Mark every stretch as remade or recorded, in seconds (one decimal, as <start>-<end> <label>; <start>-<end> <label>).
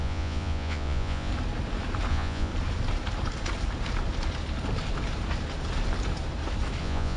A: 0.0-1.3 remade; 1.3-2.1 recorded; 2.1-2.5 remade; 2.5-6.8 recorded; 6.8-7.2 remade